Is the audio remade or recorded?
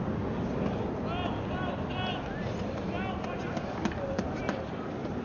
recorded